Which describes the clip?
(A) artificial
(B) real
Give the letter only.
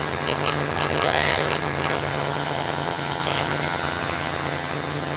A